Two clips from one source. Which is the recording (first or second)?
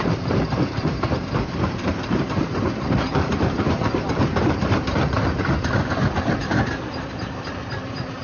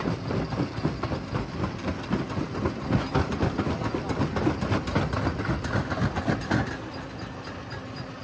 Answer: second